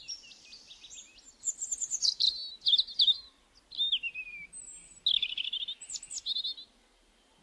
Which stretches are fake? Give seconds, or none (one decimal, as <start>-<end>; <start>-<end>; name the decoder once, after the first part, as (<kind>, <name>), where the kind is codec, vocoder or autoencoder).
none